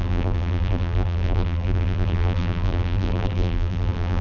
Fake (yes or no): yes